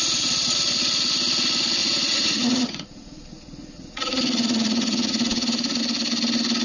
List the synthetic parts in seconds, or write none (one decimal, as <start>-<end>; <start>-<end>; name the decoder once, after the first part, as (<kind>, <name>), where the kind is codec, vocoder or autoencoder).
1.8-5.8 (vocoder, Vocos)